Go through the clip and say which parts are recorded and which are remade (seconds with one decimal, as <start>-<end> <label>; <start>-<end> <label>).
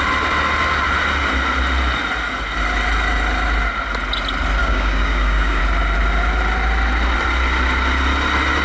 0.0-4.6 recorded; 4.6-5.6 remade; 5.6-8.6 recorded